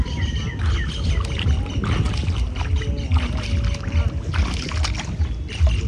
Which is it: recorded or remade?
recorded